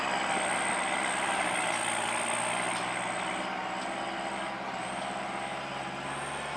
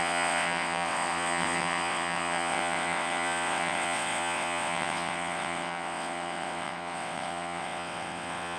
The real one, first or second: first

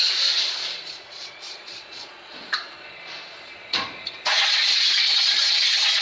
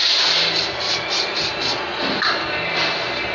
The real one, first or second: second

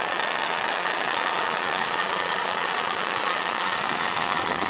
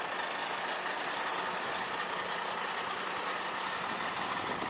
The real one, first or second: second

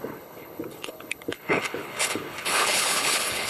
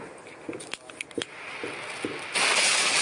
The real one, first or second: second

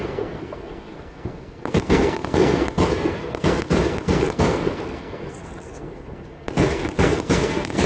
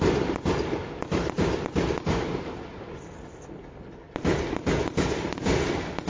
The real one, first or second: second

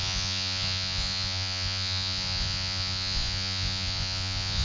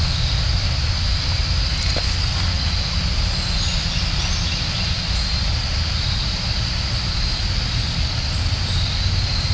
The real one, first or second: second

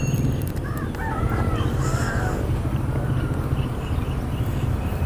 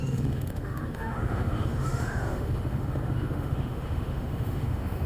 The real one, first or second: first